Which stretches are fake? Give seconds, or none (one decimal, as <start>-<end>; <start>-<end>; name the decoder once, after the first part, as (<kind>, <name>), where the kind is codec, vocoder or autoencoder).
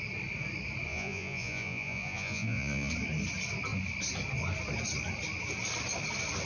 0.9-2.9 (vocoder, Vocos)